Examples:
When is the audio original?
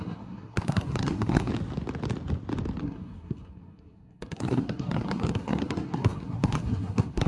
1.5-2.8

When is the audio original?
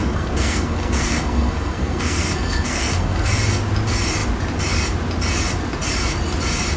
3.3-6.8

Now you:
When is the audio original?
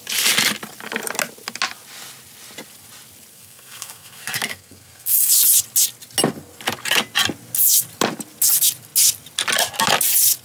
0.0-3.3; 5.3-10.4